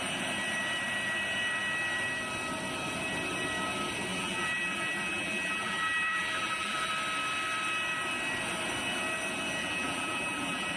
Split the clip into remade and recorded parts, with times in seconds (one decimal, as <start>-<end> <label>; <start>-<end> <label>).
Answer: 0.0-4.1 recorded; 4.1-6.9 remade; 6.9-9.6 recorded; 9.6-10.8 remade